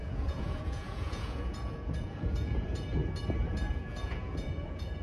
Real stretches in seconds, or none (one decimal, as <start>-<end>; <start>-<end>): 3.0-3.7